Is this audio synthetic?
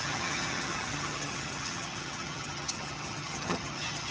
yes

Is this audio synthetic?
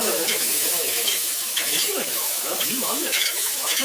yes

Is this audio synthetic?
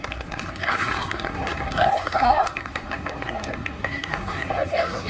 yes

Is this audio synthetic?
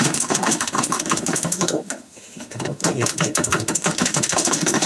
yes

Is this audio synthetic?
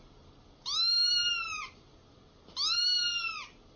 no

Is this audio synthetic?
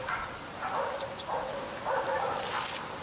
no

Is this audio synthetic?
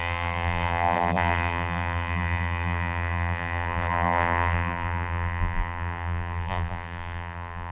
yes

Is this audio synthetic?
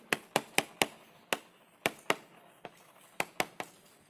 no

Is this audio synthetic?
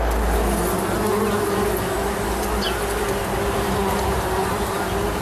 no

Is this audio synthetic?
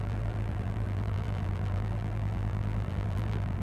yes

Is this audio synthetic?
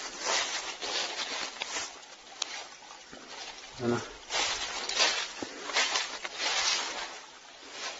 no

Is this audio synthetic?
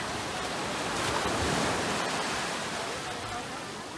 no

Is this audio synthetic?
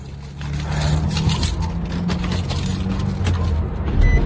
no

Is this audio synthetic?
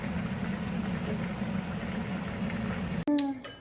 no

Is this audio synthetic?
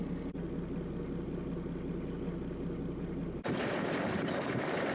no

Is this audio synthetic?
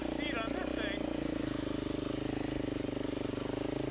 no